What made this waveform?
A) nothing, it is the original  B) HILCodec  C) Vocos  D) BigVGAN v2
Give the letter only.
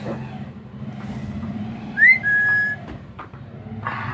A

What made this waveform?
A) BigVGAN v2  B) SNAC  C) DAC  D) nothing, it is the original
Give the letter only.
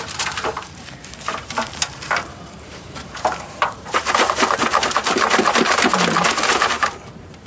A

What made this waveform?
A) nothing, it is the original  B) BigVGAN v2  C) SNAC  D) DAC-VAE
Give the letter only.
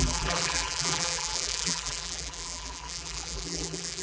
B